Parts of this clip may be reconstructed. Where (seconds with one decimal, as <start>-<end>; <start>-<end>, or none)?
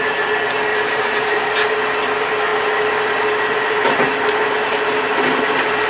0.7-1.4